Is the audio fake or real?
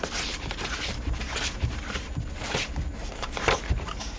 fake